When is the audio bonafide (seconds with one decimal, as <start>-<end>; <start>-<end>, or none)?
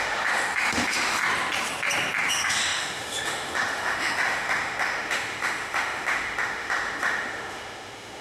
1.2-2.3